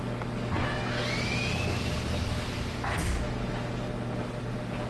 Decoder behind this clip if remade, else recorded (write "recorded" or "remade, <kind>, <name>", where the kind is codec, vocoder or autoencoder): recorded